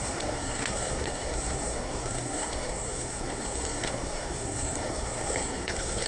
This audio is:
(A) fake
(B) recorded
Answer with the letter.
A